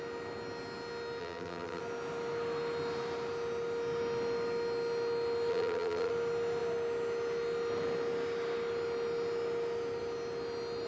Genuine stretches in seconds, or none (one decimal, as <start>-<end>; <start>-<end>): 0.0-1.2; 1.8-5.5; 6.1-10.9